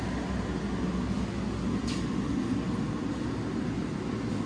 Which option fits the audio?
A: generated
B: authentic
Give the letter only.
B